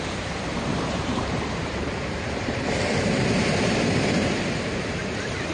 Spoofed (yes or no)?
yes